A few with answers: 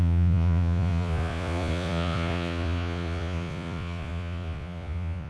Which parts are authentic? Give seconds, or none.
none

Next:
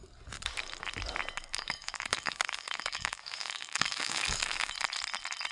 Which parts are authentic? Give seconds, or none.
0.0-1.4; 4.7-5.5